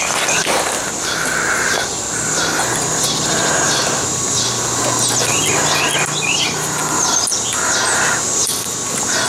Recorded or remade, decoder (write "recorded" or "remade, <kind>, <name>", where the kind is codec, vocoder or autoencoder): recorded